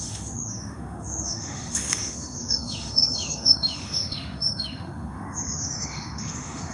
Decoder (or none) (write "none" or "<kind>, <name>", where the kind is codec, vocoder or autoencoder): autoencoder, DAC-VAE